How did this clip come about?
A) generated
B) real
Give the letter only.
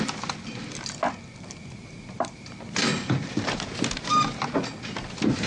B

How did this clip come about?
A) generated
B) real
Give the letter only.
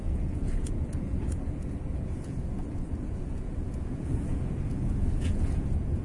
A